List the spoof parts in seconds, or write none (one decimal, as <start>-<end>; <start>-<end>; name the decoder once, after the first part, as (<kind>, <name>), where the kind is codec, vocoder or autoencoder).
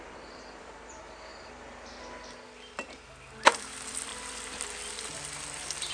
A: 0.0-1.3 (vocoder, BigVGAN v2); 3.6-4.1; 4.9-5.9